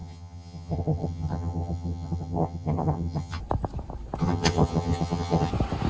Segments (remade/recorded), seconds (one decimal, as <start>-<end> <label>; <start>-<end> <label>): 0.0-3.4 remade; 3.4-4.2 recorded; 4.2-5.5 remade; 5.5-5.9 recorded